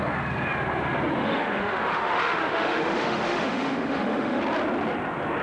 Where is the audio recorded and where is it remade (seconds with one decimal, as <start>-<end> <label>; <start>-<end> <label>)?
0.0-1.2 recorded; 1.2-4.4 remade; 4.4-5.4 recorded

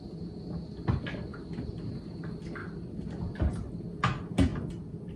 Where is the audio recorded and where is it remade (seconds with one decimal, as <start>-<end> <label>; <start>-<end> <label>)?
0.0-1.3 recorded; 1.3-2.0 remade; 2.0-2.6 recorded; 2.6-3.7 remade; 3.7-5.2 recorded

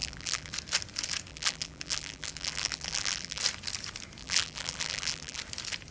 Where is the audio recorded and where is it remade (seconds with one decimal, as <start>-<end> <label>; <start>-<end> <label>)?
0.0-0.5 remade; 0.5-1.3 recorded; 1.3-3.4 remade; 3.4-4.2 recorded; 4.2-5.4 remade; 5.4-5.9 recorded

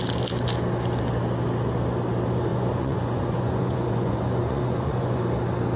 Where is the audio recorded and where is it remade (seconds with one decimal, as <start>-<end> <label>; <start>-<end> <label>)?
0.0-2.5 recorded; 2.5-5.2 remade; 5.2-5.8 recorded